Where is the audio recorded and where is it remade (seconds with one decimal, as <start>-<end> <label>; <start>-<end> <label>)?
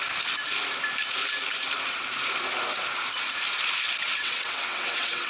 0.0-4.0 recorded; 4.0-5.3 remade